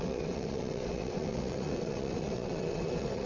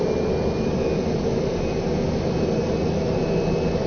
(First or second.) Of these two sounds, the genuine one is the second